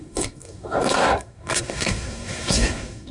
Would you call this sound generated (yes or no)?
yes